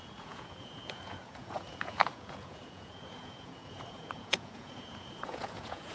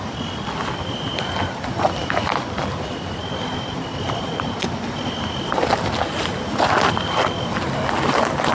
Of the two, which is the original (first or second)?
second